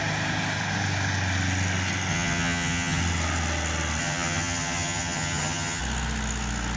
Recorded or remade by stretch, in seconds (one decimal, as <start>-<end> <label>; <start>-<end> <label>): 0.0-2.1 recorded; 2.1-3.0 remade; 3.0-4.0 recorded; 4.0-5.8 remade; 5.8-6.8 recorded